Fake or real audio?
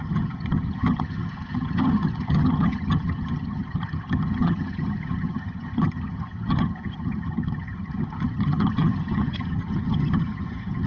fake